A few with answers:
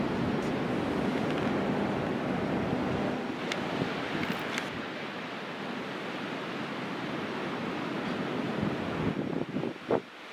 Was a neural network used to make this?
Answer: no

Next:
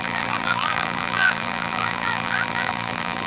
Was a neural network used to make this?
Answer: yes